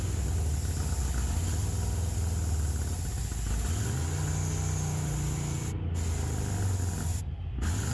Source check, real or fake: real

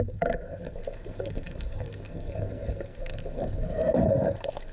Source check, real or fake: fake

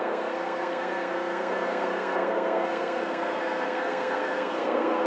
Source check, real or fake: fake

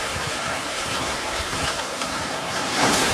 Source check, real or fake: fake